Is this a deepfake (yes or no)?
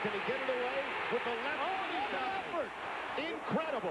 no